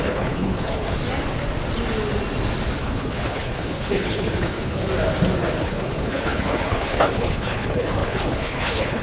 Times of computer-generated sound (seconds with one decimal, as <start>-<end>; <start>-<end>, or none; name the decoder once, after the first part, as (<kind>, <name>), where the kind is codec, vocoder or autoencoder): 0.0-1.0 (codec, HILCodec); 2.8-4.8; 5.6-9.0